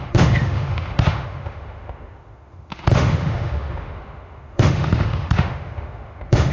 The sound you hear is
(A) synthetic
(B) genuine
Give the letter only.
A